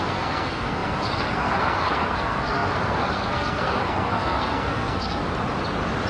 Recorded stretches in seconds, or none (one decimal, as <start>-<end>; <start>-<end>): 5.2-6.1